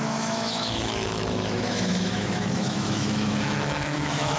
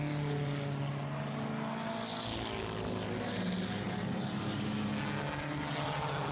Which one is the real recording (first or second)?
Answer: second